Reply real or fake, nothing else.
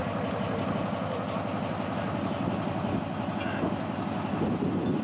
real